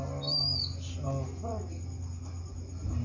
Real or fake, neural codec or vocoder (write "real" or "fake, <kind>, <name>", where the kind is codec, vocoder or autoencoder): real